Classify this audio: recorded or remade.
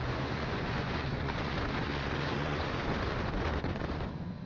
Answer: remade